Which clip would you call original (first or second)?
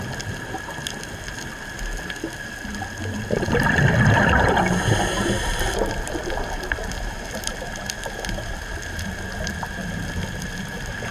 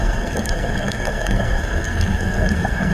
first